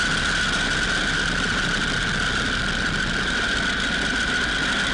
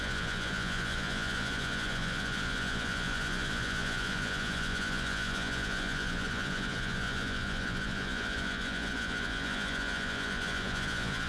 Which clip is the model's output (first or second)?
second